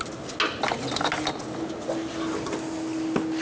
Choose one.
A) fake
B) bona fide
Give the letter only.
B